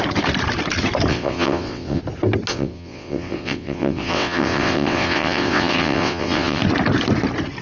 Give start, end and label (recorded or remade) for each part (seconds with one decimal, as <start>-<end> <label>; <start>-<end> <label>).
0.0-1.1 recorded; 1.1-2.0 remade; 2.0-2.5 recorded; 2.5-6.6 remade; 6.6-7.6 recorded